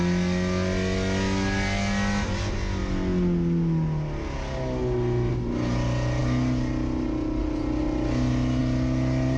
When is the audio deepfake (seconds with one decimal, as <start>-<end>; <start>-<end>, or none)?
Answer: none